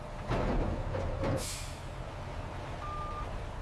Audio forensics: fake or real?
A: real